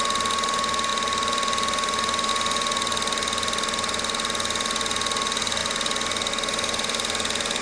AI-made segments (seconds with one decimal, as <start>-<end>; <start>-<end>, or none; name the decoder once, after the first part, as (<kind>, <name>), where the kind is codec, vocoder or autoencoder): none